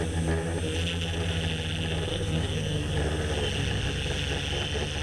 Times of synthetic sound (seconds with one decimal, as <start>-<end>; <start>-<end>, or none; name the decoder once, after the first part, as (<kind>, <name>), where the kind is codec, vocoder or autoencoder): 2.1-2.9 (codec, SNAC)